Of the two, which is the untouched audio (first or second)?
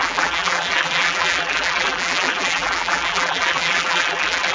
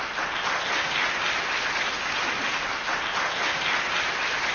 second